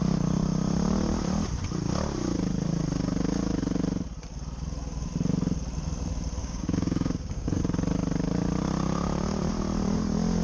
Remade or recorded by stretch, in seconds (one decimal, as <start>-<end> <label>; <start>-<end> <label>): 0.0-6.4 recorded; 6.4-7.6 remade; 7.6-10.4 recorded